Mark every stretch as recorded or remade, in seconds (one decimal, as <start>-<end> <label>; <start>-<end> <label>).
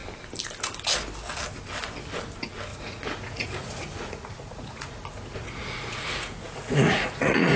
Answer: 0.0-2.7 recorded; 2.7-7.6 remade